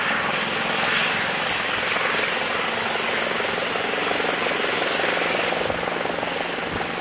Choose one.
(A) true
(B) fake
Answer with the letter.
A